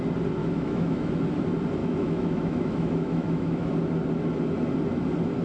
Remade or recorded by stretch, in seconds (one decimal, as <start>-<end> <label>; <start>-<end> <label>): 0.0-0.4 recorded; 0.4-1.2 remade; 1.2-1.8 recorded; 1.8-3.7 remade; 3.7-5.4 recorded